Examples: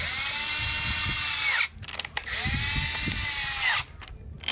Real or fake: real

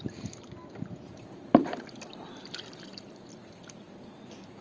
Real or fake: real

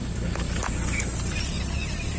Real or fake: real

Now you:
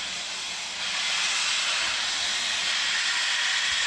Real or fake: real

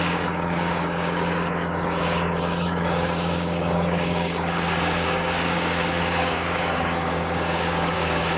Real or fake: fake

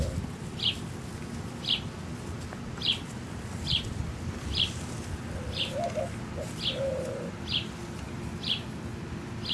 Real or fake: real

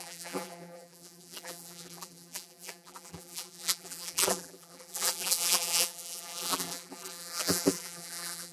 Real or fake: fake